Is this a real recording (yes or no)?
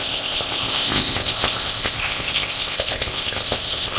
no